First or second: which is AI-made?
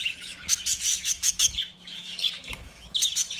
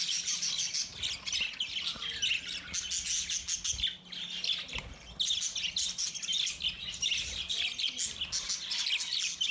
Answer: first